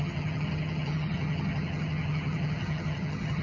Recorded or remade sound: remade